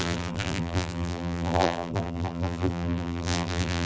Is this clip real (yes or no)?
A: no